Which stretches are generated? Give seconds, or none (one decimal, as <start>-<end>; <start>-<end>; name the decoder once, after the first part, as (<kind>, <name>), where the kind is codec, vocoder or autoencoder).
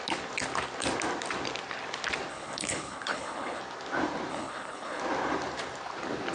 2.3-3.6 (codec, HILCodec); 4.3-5.0